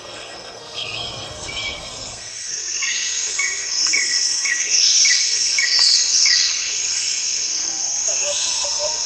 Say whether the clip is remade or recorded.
remade